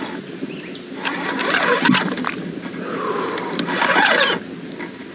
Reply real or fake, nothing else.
real